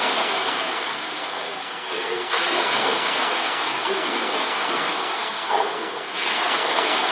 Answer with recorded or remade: remade